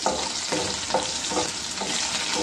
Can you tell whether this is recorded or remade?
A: recorded